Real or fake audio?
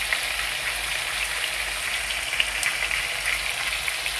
real